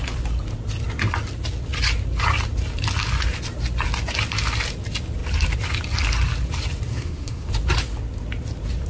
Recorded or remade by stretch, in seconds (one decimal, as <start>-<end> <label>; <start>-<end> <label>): 0.0-6.9 recorded; 6.9-7.5 remade; 7.5-8.9 recorded